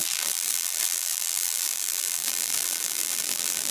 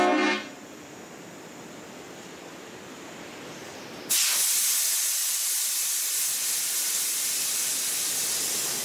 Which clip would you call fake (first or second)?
first